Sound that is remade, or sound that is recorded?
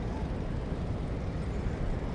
remade